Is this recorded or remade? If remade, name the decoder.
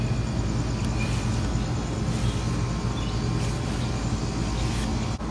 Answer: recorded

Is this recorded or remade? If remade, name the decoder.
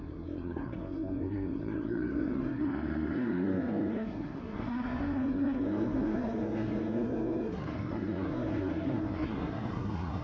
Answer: remade, codec, SNAC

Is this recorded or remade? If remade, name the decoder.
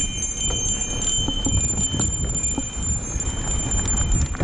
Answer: recorded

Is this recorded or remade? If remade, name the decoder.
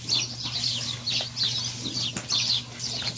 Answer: recorded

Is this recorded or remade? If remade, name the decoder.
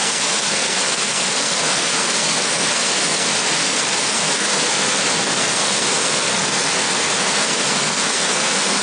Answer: remade, codec, SNAC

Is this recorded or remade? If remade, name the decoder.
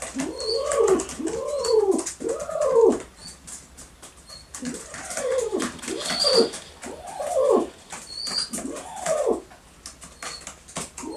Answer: recorded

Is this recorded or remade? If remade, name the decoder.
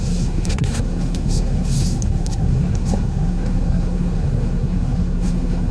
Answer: remade, codec, SNAC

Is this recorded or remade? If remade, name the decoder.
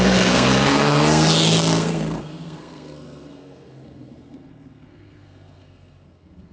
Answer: remade, codec, SNAC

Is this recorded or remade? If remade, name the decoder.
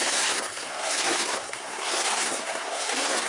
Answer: remade, codec, SNAC